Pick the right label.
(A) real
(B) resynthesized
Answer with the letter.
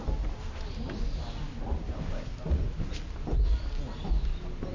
A